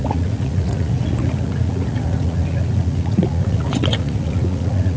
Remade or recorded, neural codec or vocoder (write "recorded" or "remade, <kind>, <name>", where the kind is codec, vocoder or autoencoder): remade, vocoder, Vocos